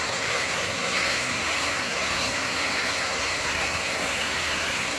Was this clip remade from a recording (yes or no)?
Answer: yes